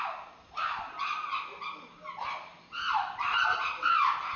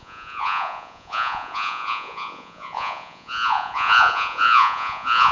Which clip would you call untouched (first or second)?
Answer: first